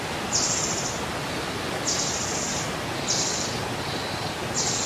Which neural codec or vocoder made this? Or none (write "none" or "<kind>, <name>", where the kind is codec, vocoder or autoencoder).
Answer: none